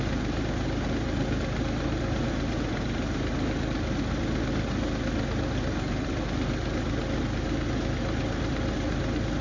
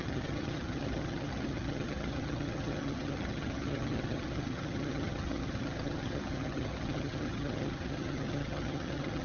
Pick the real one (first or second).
first